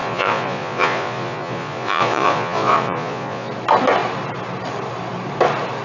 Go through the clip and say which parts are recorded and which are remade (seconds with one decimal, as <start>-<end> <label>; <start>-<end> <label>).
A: 0.0-3.5 remade; 3.5-5.8 recorded

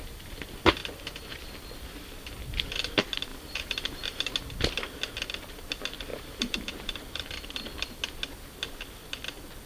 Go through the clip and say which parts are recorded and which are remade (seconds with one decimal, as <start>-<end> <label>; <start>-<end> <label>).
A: 0.0-3.3 recorded; 3.3-4.2 remade; 4.2-6.1 recorded; 6.1-7.3 remade; 7.3-9.7 recorded

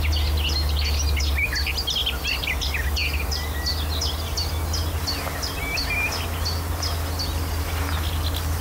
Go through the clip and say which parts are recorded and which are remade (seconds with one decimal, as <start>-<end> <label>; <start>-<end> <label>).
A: 0.0-8.6 recorded

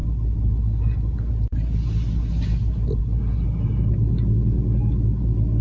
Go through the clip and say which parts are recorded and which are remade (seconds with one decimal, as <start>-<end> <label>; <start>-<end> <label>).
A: 0.0-5.6 recorded

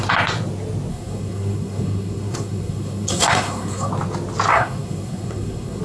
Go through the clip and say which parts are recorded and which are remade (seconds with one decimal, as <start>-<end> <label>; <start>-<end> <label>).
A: 0.0-0.9 recorded; 0.9-3.9 remade; 3.9-4.5 recorded; 4.5-5.8 remade

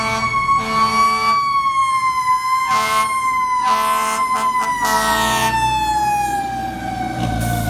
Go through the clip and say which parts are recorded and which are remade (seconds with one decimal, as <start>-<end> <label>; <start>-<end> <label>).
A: 0.0-7.7 recorded

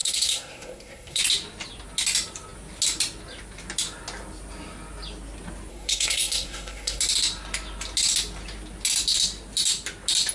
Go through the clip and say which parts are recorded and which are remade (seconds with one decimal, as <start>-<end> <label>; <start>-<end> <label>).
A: 0.0-1.2 remade; 1.2-5.7 recorded; 5.7-7.0 remade; 7.0-10.3 recorded

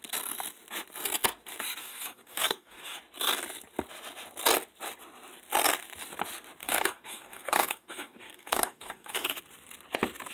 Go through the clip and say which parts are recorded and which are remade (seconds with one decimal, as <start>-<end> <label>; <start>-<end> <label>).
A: 0.0-1.8 recorded; 1.8-3.0 remade; 3.0-6.6 recorded; 6.6-9.4 remade; 9.4-10.3 recorded